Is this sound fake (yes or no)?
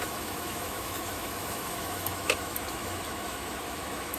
yes